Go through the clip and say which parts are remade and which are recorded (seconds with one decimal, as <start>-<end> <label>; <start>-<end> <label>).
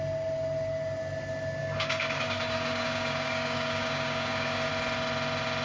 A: 0.0-1.6 recorded; 1.6-4.7 remade; 4.7-5.6 recorded